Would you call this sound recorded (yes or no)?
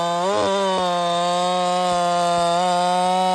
yes